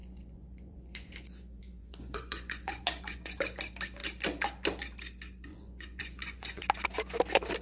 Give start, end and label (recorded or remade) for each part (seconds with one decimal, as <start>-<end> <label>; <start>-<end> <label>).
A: 0.0-3.4 remade; 3.4-5.5 recorded; 5.5-6.6 remade; 6.6-7.6 recorded